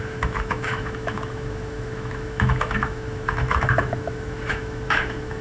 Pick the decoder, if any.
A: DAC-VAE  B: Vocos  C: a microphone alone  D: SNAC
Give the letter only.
A